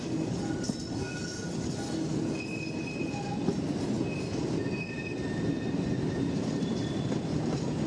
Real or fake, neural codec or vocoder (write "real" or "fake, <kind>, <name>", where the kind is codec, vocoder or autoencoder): real